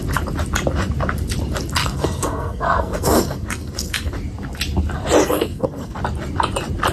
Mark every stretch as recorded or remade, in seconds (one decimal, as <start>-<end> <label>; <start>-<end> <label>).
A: 0.0-1.8 recorded; 1.8-4.1 remade; 4.1-5.2 recorded; 5.2-6.0 remade; 6.0-6.9 recorded